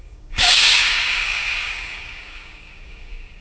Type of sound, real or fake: fake